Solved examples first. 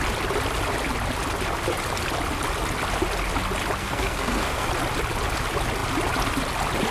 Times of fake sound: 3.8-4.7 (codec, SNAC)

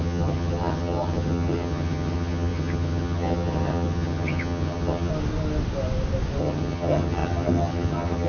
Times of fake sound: 0.0-5.1 (vocoder, HiFi-GAN); 6.4-8.3